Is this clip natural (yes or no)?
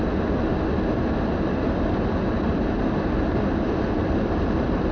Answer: yes